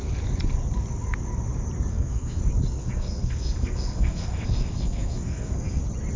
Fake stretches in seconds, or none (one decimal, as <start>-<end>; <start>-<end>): 1.9-2.4; 2.8-5.8